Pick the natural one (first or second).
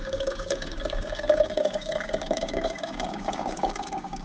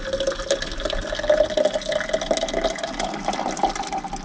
second